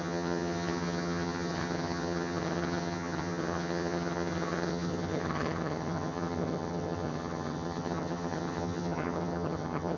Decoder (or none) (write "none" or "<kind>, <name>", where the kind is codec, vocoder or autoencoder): vocoder, HiFi-GAN